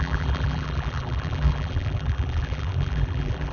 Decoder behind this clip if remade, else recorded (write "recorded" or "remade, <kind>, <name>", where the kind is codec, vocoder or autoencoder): remade, vocoder, BigVGAN v2